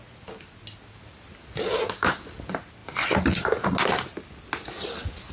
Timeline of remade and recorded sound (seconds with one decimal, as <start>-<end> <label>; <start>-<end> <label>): 0.0-5.3 recorded